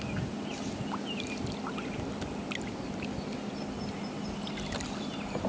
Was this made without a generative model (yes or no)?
yes